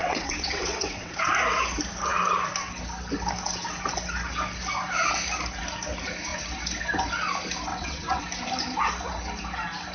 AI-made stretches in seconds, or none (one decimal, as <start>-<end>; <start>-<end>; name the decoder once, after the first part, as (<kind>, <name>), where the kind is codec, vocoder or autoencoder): 0.0-1.3 (vocoder, WaveNeXt); 7.7-8.2